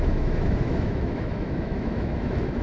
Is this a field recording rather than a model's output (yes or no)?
no